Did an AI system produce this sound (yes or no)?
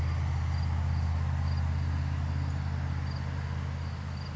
no